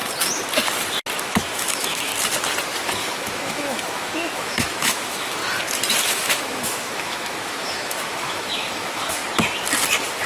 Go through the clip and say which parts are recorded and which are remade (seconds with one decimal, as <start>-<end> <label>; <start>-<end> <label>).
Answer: 0.0-1.2 recorded; 1.2-2.1 remade; 2.1-3.2 recorded; 3.2-5.4 remade; 5.4-6.0 recorded; 6.0-9.2 remade; 9.2-10.3 recorded